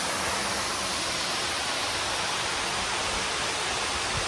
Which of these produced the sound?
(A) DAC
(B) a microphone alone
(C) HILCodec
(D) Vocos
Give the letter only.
B